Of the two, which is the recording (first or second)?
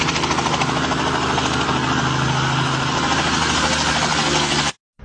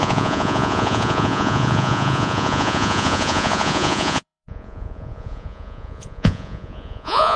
first